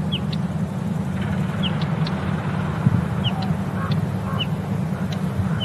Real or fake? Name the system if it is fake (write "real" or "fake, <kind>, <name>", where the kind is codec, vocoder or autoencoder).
real